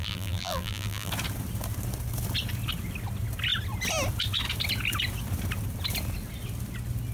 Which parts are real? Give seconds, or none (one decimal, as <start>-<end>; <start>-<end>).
1.1-7.1